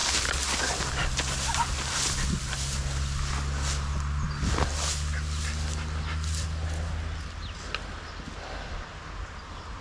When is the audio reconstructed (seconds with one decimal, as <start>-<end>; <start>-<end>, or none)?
none